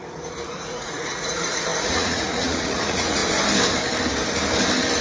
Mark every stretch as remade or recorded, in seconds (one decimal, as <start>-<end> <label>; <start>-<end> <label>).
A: 0.0-3.2 remade; 3.2-5.0 recorded